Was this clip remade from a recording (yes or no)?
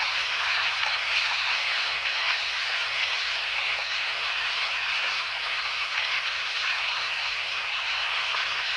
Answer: yes